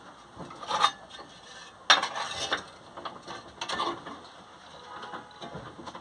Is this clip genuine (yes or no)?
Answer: yes